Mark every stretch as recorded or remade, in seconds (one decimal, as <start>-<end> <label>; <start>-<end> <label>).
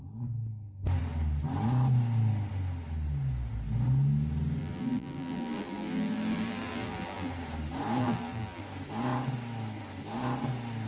0.0-4.6 recorded; 4.6-7.3 remade; 7.3-8.0 recorded; 8.0-8.6 remade; 8.6-10.9 recorded